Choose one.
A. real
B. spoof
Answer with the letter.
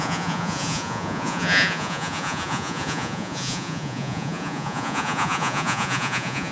B